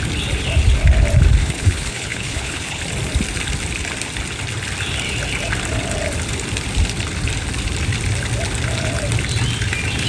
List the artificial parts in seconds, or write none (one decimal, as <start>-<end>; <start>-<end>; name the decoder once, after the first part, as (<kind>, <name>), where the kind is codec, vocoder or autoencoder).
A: 1.4-2.8 (codec, HILCodec)

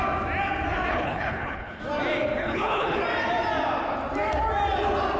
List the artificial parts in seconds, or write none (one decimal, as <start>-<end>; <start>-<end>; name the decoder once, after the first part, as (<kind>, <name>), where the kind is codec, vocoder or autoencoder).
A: 0.9-1.8 (codec, HILCodec); 2.4-3.0

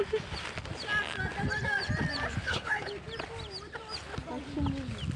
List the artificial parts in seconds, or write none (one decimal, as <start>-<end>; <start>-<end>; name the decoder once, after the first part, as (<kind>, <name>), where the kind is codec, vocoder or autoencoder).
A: 2.4-2.9 (codec, HILCodec)

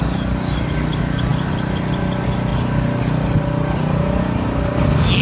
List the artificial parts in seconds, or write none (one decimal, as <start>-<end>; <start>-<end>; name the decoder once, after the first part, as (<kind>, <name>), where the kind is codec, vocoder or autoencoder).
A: none